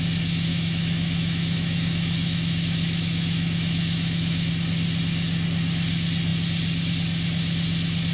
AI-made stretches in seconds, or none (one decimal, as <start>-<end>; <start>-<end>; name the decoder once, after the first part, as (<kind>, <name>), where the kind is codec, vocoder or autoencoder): 0.5-4.5 (autoencoder, DAC-VAE)